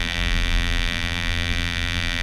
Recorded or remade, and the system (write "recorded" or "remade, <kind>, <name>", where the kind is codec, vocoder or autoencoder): remade, vocoder, BigVGAN v2